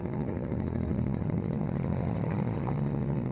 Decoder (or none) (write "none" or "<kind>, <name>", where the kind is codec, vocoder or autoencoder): vocoder, Vocos